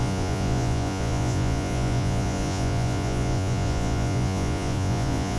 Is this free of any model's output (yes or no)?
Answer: no